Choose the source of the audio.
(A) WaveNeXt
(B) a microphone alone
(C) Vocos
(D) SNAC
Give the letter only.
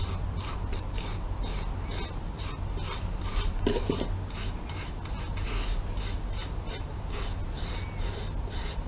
B